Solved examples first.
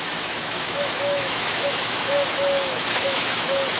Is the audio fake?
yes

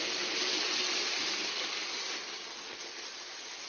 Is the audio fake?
no